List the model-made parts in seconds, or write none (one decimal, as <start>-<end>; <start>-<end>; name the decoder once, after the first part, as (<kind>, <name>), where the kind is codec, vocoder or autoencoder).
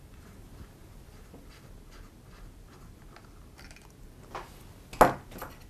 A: none